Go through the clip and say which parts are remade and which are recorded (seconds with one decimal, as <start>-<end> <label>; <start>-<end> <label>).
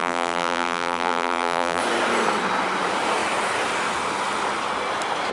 0.0-1.8 remade; 1.8-5.3 recorded